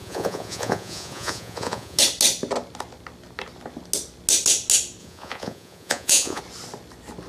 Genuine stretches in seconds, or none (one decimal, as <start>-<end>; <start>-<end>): 2.0-5.0; 6.4-7.3